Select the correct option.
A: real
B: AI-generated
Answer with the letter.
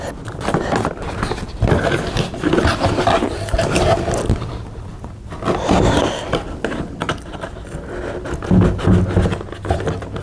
A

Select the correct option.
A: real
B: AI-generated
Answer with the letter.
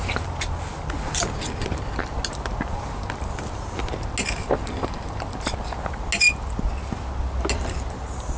A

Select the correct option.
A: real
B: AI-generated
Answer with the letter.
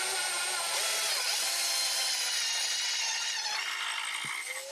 A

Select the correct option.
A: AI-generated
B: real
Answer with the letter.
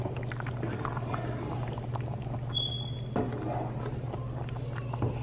B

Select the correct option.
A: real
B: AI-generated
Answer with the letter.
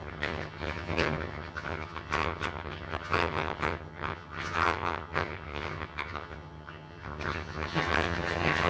B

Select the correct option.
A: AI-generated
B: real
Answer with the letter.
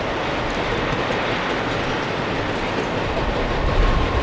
B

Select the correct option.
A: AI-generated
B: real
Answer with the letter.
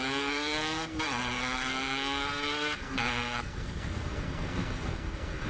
A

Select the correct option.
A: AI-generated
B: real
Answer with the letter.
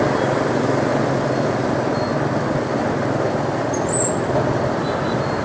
B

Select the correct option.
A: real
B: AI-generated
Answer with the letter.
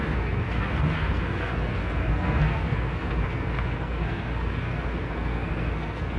B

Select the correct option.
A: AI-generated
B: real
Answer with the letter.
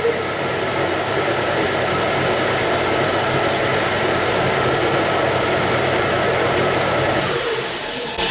A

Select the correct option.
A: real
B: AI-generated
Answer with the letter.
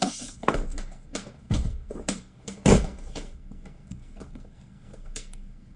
B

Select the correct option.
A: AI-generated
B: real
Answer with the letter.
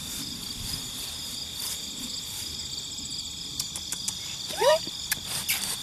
A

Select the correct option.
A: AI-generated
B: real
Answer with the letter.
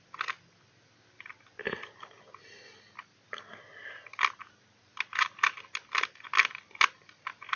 B